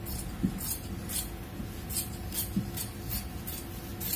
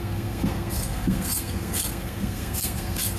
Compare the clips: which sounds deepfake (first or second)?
second